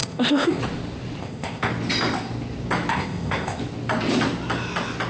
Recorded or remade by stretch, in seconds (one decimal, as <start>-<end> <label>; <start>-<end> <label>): 0.0-0.6 remade; 0.6-1.2 recorded; 1.2-1.7 remade; 1.7-2.9 recorded; 2.9-3.6 remade; 3.6-5.1 recorded

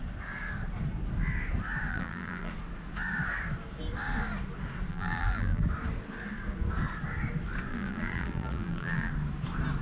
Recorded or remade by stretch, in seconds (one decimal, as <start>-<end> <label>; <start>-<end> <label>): 0.0-1.9 recorded; 1.9-2.5 remade; 2.5-4.9 recorded; 4.9-5.6 remade; 5.6-7.7 recorded; 7.7-9.1 remade; 9.1-9.8 recorded

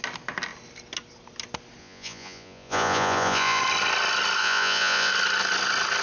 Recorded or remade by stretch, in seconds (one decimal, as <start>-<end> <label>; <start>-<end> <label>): 0.0-1.8 recorded; 1.8-3.6 remade; 3.6-4.4 recorded; 4.4-5.1 remade; 5.1-6.0 recorded